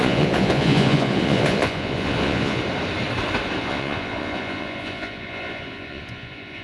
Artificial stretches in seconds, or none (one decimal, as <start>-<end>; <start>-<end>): 0.0-2.6; 3.6-6.6